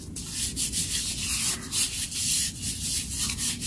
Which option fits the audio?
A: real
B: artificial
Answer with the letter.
A